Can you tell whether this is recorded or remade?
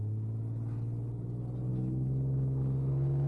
recorded